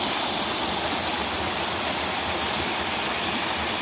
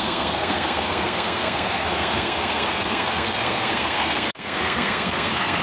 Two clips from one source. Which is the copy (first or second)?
second